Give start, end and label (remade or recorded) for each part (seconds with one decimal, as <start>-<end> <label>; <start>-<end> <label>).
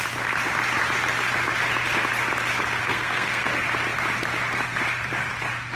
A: 0.0-2.8 recorded; 2.8-3.5 remade; 3.5-5.8 recorded